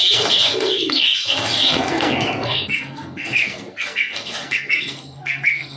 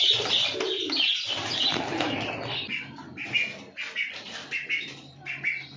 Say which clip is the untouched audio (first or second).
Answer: second